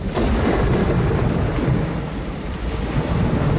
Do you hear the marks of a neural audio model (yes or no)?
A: no